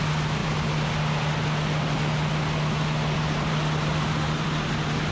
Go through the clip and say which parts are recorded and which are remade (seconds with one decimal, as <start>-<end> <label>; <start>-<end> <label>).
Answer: 0.0-5.1 recorded